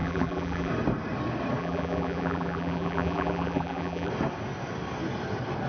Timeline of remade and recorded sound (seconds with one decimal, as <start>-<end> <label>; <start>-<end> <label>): 0.0-0.7 remade; 0.7-1.6 recorded; 1.6-4.1 remade; 4.1-5.7 recorded